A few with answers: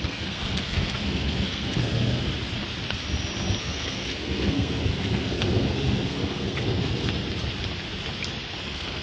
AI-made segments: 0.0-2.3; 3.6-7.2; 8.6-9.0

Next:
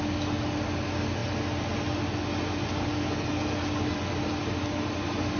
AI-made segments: none

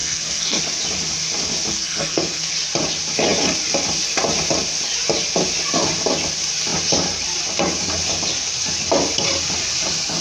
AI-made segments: 0.0-0.6; 1.7-2.5

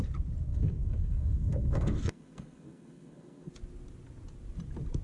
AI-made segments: 0.5-3.5